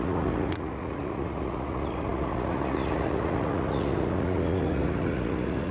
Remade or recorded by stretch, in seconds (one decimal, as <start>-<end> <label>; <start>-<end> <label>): 0.0-5.7 remade